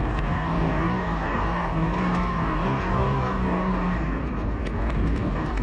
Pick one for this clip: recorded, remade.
remade